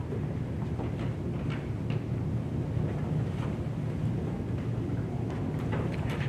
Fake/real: real